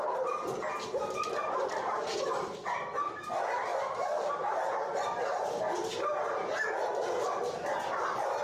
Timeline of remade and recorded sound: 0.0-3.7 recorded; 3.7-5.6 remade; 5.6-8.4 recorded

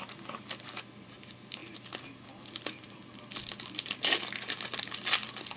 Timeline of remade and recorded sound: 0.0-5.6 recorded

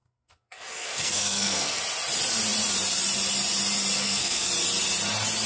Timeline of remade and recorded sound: 0.0-1.8 remade; 1.8-4.0 recorded; 4.0-4.5 remade; 4.5-5.5 recorded

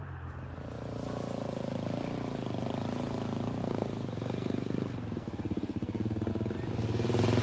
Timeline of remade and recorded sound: 0.0-3.6 recorded; 3.6-6.3 remade; 6.3-7.4 recorded

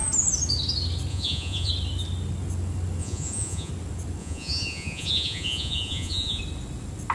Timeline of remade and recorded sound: 0.0-1.1 recorded; 1.1-1.7 remade; 1.7-3.0 recorded; 3.0-3.7 remade; 3.7-4.2 recorded; 4.2-6.4 remade; 6.4-7.1 recorded

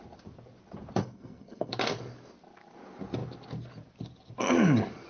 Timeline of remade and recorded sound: 0.0-1.0 recorded; 1.0-1.7 remade; 1.7-5.1 recorded

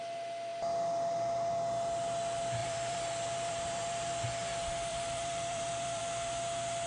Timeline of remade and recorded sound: 0.0-2.6 recorded; 2.6-4.1 remade; 4.1-4.9 recorded; 4.9-6.0 remade; 6.0-6.9 recorded

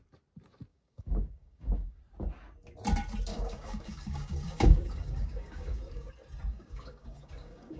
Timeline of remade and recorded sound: 0.0-0.7 recorded; 0.7-2.0 remade; 2.0-3.3 recorded; 3.3-6.1 remade; 6.1-6.5 recorded; 6.5-7.8 remade